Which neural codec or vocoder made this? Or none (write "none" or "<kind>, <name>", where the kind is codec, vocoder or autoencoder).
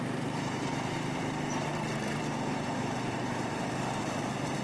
vocoder, BigVGAN v2